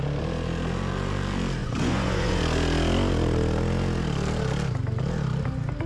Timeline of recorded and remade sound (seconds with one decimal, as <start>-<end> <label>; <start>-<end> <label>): 0.0-1.6 recorded; 1.6-2.4 remade; 2.4-5.9 recorded